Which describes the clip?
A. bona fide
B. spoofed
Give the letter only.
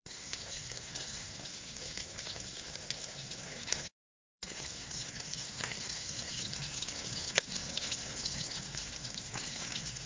B